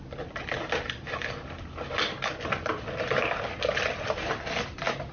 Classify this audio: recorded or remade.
recorded